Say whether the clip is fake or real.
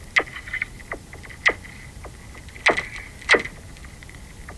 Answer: real